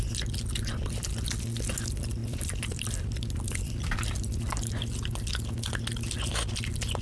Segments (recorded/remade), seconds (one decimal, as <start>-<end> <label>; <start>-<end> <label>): 0.0-2.2 recorded; 2.2-4.7 remade; 4.7-7.0 recorded